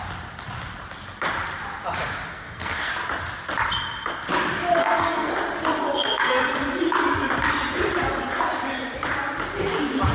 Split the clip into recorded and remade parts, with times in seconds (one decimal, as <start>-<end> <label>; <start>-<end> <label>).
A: 0.0-2.3 recorded; 2.3-2.9 remade; 2.9-4.8 recorded; 4.8-5.3 remade; 5.3-5.8 recorded; 5.8-6.4 remade; 6.4-10.1 recorded